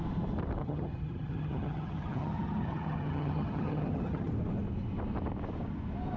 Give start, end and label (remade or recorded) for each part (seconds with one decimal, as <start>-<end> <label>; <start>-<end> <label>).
0.0-0.6 recorded; 0.6-4.3 remade; 4.3-6.2 recorded